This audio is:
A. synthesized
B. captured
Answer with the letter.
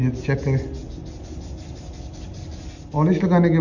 B